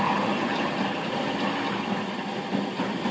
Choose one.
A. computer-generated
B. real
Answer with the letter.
B